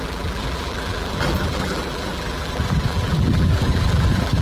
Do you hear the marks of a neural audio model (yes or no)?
yes